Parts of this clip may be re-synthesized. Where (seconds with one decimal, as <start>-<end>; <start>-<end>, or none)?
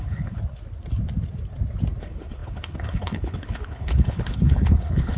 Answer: 0.0-0.4; 2.0-5.2